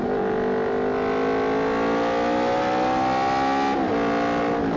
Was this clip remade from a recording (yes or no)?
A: no